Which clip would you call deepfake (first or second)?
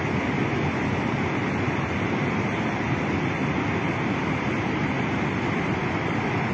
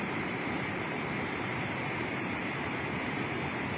second